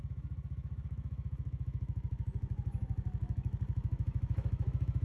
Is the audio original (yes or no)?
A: no